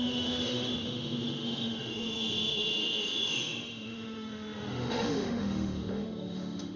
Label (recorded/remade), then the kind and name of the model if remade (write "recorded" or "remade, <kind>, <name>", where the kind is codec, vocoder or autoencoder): remade, autoencoder, DAC-VAE